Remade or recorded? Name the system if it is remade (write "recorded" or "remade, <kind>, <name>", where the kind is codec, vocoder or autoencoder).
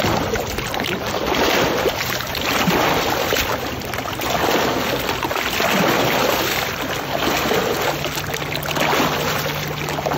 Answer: recorded